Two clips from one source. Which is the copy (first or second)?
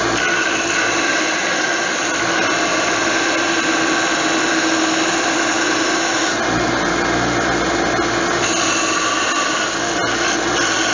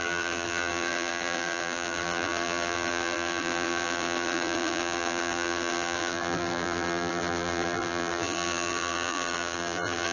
second